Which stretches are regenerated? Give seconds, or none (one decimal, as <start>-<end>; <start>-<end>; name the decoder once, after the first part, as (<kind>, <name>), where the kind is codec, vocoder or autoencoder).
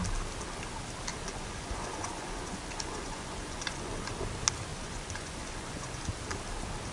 1.1-4.3 (vocoder, Vocos); 4.7-6.0